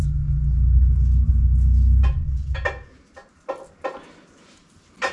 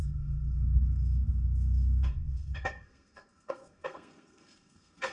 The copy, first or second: second